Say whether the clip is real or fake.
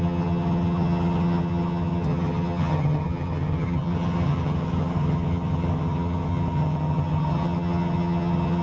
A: fake